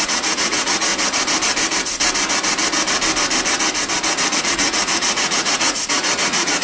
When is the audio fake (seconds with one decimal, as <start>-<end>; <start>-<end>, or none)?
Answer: 0.0-0.9; 4.4-6.6